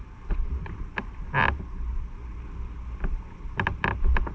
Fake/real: real